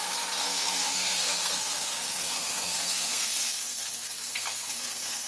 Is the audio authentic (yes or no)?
no